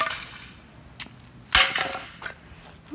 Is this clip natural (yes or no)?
yes